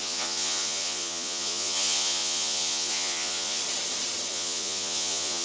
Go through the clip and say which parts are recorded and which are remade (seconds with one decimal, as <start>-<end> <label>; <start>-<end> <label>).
0.0-3.6 remade; 3.6-4.3 recorded; 4.3-5.4 remade